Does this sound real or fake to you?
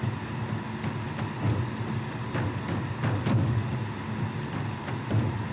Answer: real